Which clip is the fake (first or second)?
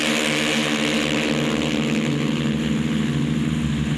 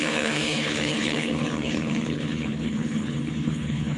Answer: second